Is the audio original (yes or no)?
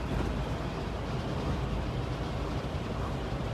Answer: yes